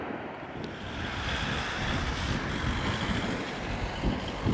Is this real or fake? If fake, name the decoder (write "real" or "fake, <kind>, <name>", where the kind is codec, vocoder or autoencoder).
real